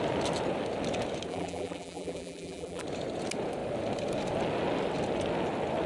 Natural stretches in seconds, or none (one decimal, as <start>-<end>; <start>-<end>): 0.0-1.3; 2.8-5.9